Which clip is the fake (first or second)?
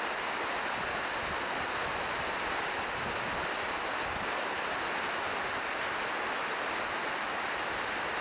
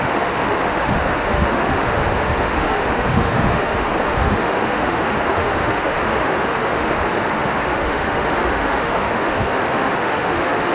second